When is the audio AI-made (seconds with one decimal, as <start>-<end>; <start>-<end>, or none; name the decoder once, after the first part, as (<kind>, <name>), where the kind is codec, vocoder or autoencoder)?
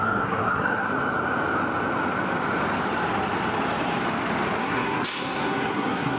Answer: 0.0-0.9 (codec, SNAC); 4.6-6.2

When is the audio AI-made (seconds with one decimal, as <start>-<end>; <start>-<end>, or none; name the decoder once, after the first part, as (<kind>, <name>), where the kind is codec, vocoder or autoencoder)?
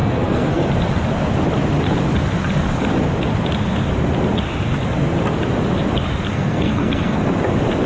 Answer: 0.0-0.7 (codec, SNAC); 6.3-7.2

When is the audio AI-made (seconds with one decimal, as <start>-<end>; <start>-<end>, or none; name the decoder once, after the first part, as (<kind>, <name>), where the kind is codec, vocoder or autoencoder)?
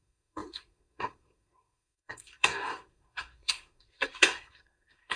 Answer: 0.0-5.2 (codec, SNAC)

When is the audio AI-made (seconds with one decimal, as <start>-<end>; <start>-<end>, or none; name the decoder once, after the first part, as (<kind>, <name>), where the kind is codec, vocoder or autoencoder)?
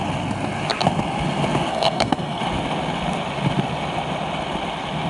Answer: 1.7-2.4 (codec, SNAC)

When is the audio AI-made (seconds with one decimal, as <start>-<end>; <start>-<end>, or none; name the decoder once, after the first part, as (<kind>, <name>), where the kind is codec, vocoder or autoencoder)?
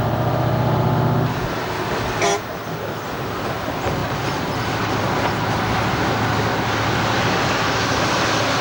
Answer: none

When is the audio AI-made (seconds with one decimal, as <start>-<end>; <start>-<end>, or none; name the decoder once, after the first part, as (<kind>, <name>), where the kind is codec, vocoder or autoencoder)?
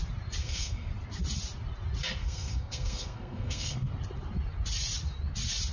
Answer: 0.4-0.9 (codec, SNAC); 2.2-3.9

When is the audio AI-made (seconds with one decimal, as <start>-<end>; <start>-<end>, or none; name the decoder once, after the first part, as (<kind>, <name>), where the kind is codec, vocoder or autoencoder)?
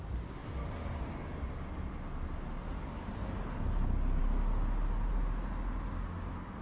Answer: none